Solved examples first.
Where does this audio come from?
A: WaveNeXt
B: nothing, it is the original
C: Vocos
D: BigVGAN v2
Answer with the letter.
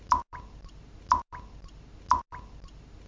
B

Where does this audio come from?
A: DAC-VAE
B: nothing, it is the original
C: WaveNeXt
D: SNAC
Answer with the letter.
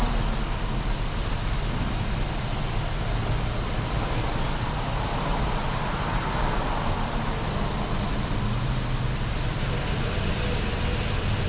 B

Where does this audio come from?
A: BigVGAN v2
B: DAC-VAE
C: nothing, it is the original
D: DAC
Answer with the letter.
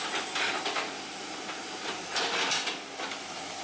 C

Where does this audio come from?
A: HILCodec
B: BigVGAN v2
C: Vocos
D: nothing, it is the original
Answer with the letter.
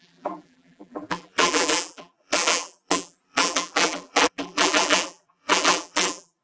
B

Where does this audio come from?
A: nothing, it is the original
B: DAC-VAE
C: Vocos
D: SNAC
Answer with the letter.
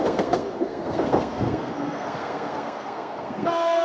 D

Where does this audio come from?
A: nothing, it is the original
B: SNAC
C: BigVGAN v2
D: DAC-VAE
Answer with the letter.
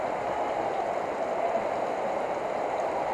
A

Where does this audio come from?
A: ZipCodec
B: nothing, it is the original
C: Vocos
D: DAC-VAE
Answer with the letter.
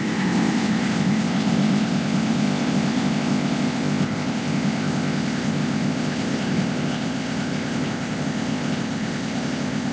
A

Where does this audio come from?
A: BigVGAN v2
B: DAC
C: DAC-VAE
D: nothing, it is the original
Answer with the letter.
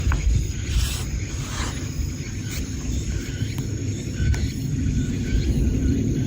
D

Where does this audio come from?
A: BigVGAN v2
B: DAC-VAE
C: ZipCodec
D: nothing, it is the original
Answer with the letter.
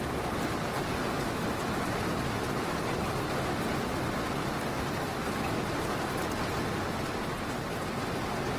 D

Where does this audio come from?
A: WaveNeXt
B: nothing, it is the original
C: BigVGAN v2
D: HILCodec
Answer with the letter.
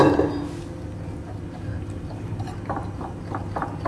B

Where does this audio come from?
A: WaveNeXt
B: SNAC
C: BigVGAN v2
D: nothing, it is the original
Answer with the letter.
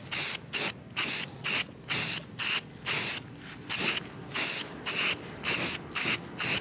D